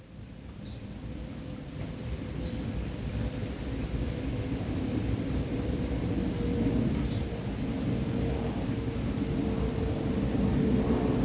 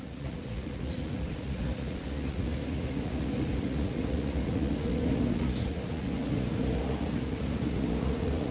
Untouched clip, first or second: first